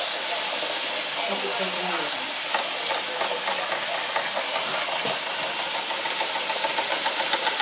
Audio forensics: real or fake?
real